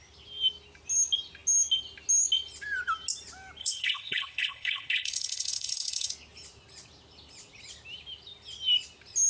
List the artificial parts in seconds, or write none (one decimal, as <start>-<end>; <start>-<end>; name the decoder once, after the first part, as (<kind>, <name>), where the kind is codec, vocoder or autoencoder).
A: 3.6-6.1 (codec, HILCodec)